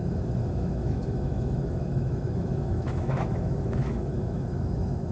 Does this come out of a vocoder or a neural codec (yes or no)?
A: yes